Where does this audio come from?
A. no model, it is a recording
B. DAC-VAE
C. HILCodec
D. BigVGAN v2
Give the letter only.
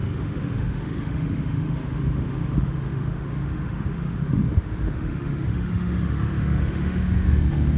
B